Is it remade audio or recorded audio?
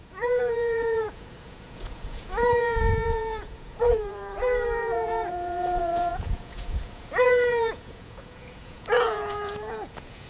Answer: remade